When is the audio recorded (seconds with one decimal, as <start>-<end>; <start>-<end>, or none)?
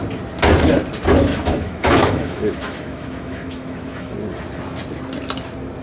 0.0-1.3; 4.1-5.8